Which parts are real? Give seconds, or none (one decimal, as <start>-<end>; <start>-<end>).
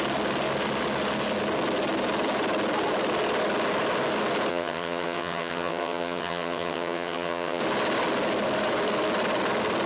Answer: 0.0-4.5; 7.6-9.9